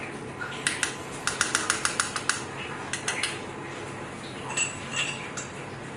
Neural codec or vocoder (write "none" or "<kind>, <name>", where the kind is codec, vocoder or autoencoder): none